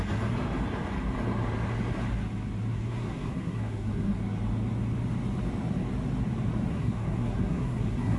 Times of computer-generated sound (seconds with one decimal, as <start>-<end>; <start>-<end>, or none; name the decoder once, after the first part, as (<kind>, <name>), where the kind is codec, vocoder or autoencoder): 2.7-4.1 (codec, SNAC); 6.7-8.2

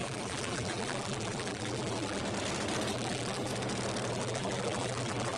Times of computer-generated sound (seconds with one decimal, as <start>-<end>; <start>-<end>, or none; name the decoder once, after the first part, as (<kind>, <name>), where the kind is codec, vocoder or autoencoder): 0.0-2.2 (vocoder, BigVGAN v2); 2.9-3.5; 4.1-5.4

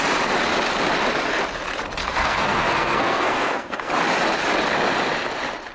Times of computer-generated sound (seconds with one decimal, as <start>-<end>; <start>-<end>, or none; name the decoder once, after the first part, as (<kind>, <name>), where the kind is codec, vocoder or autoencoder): 2.0-3.9 (codec, SNAC)

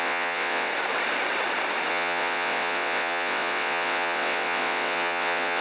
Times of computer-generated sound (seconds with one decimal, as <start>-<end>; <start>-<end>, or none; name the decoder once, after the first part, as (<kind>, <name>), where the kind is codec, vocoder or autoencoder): 0.0-0.7 (vocoder, WaveNeXt); 1.9-5.6